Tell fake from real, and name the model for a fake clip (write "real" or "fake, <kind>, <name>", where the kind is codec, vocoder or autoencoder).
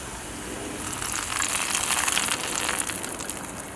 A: real